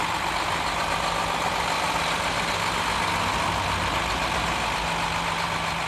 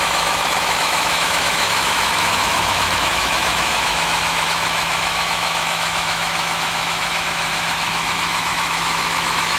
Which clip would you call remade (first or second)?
second